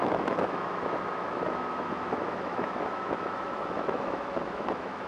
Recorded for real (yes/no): no